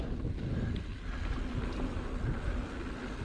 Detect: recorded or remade recorded